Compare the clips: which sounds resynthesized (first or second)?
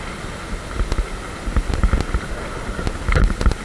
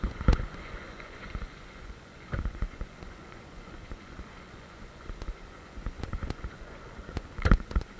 second